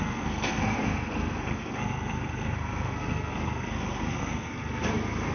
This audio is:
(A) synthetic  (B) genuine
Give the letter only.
A